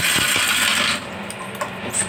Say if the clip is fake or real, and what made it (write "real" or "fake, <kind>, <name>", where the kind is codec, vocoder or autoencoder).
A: real